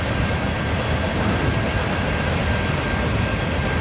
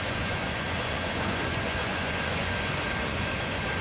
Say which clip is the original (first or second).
first